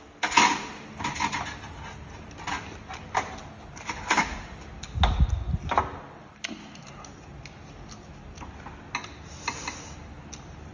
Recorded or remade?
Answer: recorded